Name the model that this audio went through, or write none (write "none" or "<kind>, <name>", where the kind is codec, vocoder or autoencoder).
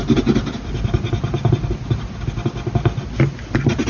none